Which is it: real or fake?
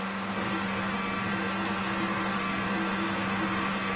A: real